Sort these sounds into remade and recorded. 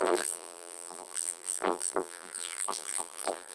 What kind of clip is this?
remade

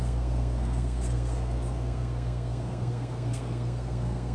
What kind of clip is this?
remade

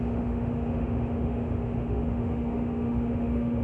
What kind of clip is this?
remade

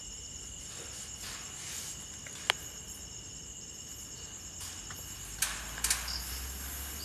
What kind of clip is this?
recorded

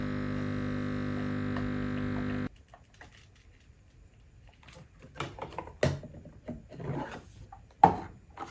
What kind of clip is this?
recorded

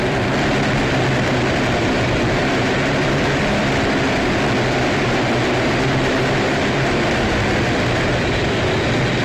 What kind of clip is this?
remade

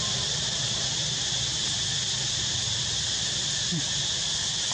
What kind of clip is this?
recorded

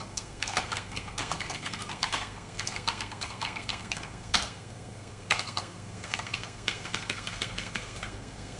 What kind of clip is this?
remade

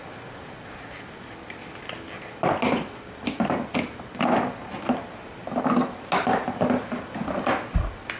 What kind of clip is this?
recorded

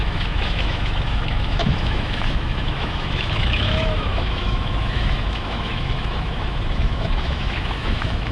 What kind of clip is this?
remade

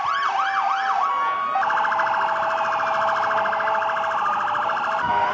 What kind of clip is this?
recorded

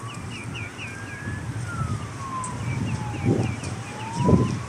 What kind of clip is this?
recorded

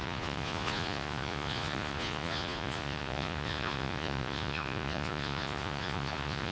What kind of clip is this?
remade